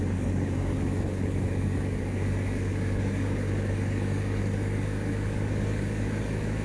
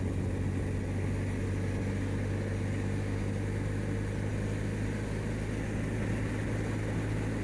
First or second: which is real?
second